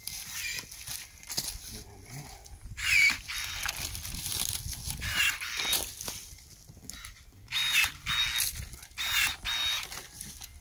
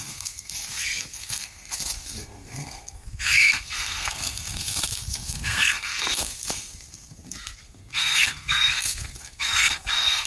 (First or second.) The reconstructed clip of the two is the second